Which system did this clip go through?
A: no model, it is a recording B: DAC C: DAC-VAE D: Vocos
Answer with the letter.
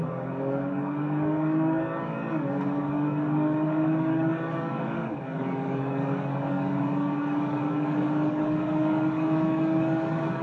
B